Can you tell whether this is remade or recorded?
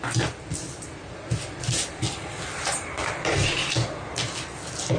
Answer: recorded